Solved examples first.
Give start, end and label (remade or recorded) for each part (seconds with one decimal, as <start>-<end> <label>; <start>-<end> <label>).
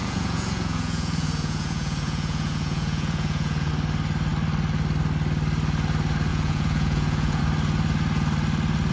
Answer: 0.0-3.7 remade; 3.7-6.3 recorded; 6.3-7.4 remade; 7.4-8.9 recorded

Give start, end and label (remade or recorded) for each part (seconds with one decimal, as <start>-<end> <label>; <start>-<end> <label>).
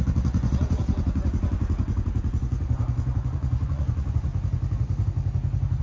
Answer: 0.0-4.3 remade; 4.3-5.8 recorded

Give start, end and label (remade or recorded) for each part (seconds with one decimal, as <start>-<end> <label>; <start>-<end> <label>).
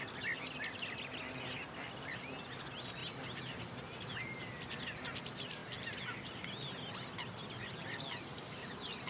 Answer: 0.0-9.1 recorded